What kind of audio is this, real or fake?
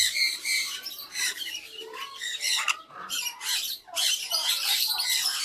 fake